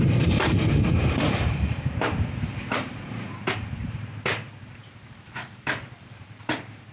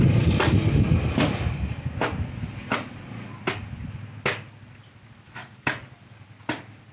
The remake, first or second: first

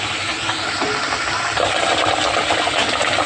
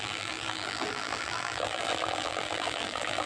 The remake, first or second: second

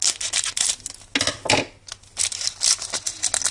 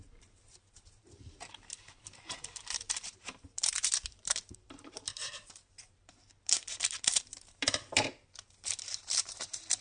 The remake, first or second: second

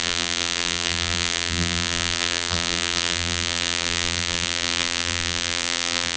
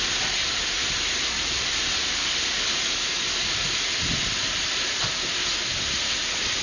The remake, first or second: first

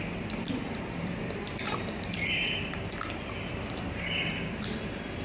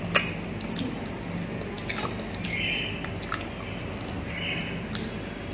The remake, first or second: first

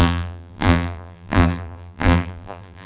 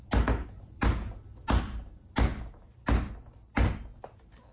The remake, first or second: first